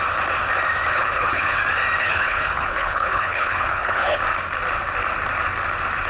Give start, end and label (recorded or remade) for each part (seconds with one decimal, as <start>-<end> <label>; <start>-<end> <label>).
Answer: 0.0-0.9 recorded; 0.9-1.6 remade; 1.6-2.0 recorded; 2.0-4.2 remade; 4.2-6.1 recorded